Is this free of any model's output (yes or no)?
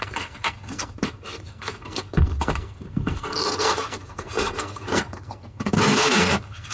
no